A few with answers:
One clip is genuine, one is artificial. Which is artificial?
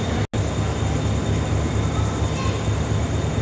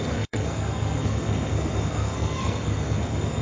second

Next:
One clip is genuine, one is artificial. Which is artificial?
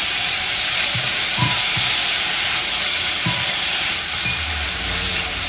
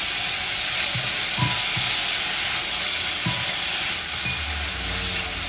first